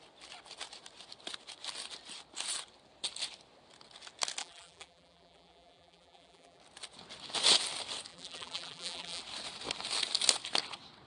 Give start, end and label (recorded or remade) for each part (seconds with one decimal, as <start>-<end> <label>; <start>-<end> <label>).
0.0-4.4 recorded; 4.4-6.6 remade; 6.6-8.1 recorded; 8.1-9.2 remade; 9.2-11.1 recorded